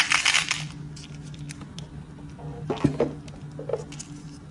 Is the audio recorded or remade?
recorded